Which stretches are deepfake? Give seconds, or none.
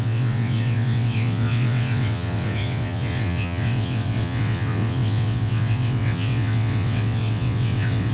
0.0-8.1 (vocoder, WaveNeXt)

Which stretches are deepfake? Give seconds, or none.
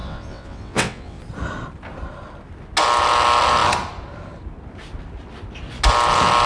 0.0-1.2 (vocoder, WaveNeXt)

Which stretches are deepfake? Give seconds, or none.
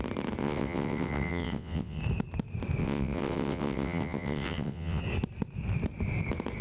0.4-2.0 (vocoder, WaveNeXt); 2.8-5.0